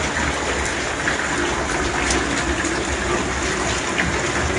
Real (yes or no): yes